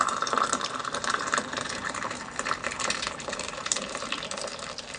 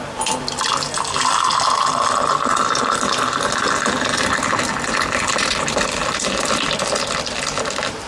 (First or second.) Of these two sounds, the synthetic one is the first